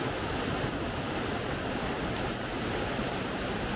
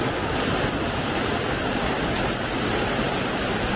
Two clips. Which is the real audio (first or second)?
second